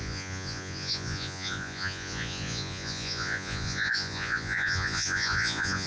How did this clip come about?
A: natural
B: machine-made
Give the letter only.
B